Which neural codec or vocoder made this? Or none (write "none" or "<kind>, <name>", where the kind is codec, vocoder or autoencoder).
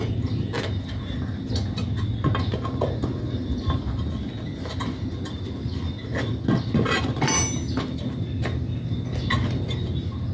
none